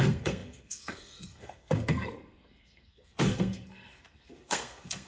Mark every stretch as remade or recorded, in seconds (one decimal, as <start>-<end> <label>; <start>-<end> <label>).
0.0-5.1 remade